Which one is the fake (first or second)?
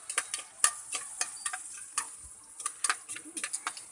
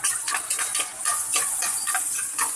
second